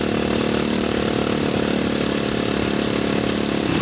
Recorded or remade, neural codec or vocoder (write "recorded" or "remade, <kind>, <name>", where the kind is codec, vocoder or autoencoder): recorded